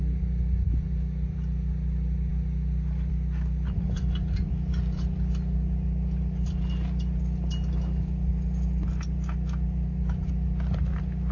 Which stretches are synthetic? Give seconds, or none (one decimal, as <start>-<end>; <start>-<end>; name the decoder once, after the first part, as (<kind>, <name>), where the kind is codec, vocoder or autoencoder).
none